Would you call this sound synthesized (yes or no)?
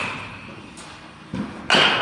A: no